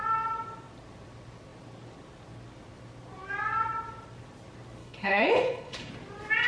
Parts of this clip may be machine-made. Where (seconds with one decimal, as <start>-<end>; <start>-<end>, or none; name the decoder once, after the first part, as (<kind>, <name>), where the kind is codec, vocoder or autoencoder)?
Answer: 4.8-5.9 (codec, HILCodec)